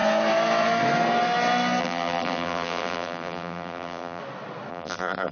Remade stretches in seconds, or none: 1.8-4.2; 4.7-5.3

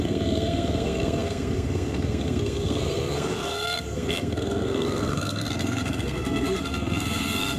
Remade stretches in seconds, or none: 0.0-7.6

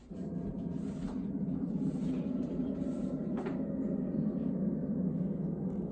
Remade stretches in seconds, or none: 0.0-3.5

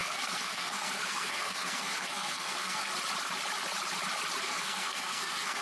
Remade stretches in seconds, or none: 0.0-2.9; 4.4-5.6

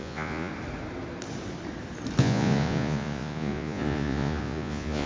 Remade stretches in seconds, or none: 0.0-0.5; 2.2-5.1

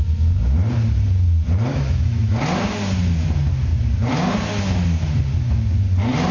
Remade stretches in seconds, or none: 1.7-2.4

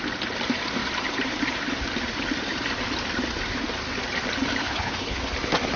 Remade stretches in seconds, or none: 4.6-5.2

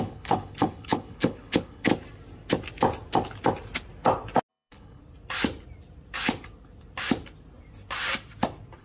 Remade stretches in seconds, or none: 0.0-1.9; 4.5-5.0